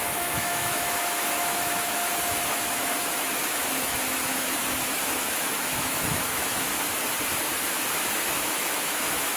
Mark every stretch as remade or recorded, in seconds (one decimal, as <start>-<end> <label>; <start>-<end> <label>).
0.0-6.7 remade; 6.7-8.1 recorded; 8.1-9.4 remade